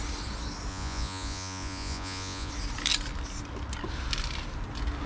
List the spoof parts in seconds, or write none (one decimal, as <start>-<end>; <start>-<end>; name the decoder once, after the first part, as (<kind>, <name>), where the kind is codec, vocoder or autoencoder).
0.7-2.5 (vocoder, Vocos)